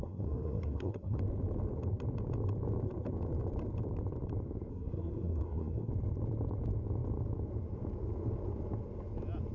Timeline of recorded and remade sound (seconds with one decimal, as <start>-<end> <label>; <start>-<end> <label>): 0.0-1.2 remade; 1.2-4.7 recorded; 4.7-5.9 remade; 5.9-9.5 recorded